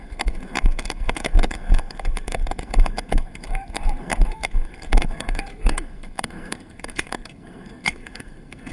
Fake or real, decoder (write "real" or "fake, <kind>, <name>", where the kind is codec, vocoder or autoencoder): fake, codec, SNAC